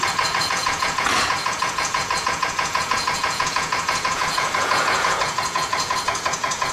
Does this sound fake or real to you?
fake